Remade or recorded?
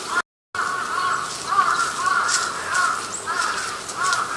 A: recorded